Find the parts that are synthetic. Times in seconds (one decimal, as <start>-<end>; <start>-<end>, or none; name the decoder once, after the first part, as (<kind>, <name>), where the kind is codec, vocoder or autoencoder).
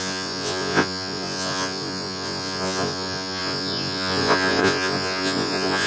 0.0-5.9 (vocoder, Vocos)